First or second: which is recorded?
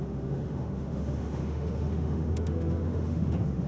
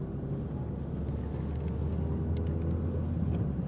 second